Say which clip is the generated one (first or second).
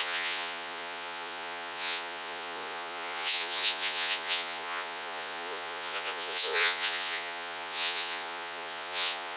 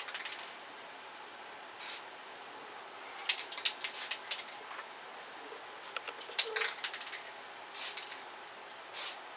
first